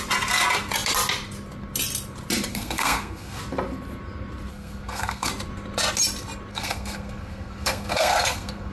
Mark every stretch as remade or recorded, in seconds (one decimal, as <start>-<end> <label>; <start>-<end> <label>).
0.0-2.5 recorded; 2.5-3.4 remade; 3.4-4.5 recorded; 4.5-5.3 remade; 5.3-6.5 recorded; 6.5-8.7 remade